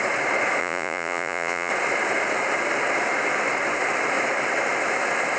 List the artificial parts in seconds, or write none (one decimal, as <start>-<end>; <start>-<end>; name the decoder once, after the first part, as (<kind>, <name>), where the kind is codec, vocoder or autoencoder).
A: 0.6-1.7 (vocoder, Vocos)